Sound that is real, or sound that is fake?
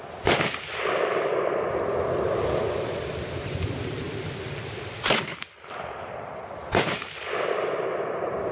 real